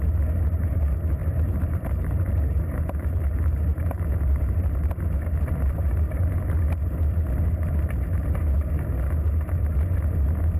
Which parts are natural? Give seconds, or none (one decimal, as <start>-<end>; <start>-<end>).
0.0-1.2; 4.9-10.6